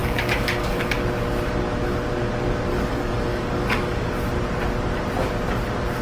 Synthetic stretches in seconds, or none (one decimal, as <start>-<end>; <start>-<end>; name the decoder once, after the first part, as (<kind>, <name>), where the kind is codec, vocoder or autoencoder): 0.0-0.9 (codec, DAC); 2.7-4.1